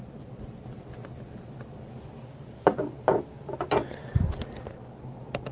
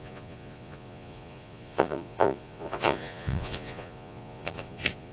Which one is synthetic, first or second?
second